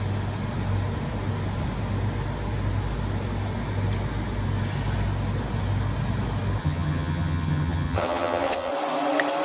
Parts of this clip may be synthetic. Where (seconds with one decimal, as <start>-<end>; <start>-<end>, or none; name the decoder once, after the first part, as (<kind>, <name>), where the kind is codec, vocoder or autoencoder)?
6.6-8.7 (vocoder, HiFi-GAN)